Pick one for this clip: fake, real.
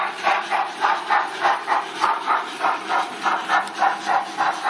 fake